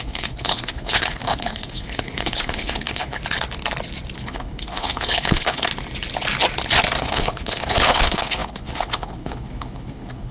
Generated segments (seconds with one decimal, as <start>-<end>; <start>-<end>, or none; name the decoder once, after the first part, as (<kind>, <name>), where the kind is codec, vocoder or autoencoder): 0.0-3.2 (codec, HILCodec); 4.2-5.7; 7.0-10.3